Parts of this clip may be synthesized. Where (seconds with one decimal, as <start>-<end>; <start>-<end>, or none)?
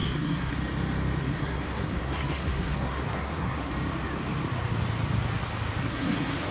0.0-0.6; 1.2-3.7; 5.8-6.5